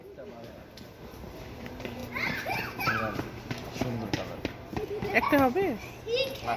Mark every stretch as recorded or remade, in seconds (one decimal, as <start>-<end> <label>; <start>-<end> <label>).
0.0-6.6 recorded

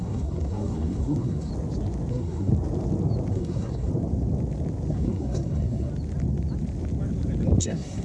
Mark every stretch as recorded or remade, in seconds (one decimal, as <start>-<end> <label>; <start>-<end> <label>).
0.0-1.5 remade; 1.5-2.1 recorded; 2.1-2.5 remade; 2.5-3.3 recorded; 3.3-3.9 remade; 3.9-4.9 recorded; 4.9-5.9 remade; 5.9-7.6 recorded; 7.6-8.0 remade

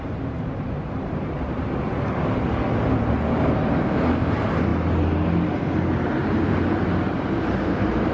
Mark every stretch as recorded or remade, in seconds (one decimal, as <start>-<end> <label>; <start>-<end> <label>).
0.0-4.7 remade; 4.7-6.2 recorded; 6.2-8.1 remade

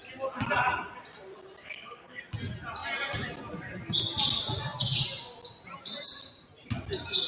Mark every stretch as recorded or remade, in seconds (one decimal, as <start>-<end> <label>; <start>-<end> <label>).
0.0-1.6 recorded; 1.6-2.2 remade; 2.2-7.3 recorded

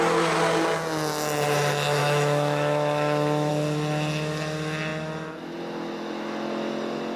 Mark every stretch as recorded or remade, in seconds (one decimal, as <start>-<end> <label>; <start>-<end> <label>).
0.0-2.0 recorded; 2.0-3.5 remade; 3.5-7.2 recorded

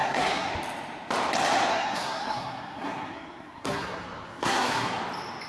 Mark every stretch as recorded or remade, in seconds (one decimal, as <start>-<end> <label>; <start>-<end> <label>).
0.0-0.5 remade; 0.5-1.7 recorded; 1.7-5.0 remade; 5.0-5.5 recorded

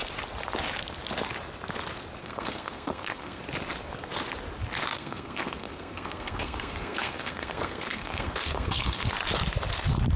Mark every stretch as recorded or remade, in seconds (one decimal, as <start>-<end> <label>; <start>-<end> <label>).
0.0-2.2 recorded; 2.2-3.4 remade; 3.4-4.9 recorded; 4.9-9.1 remade; 9.1-10.2 recorded